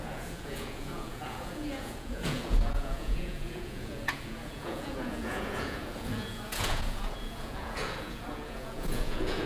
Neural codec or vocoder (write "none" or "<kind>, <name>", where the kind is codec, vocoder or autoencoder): vocoder, Vocos